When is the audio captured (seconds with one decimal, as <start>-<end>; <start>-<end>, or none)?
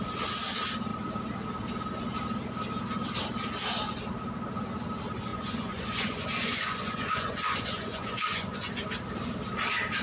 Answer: 0.0-5.3; 8.7-10.0